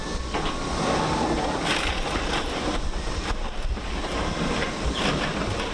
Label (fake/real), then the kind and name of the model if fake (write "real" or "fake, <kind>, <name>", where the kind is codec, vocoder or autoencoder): real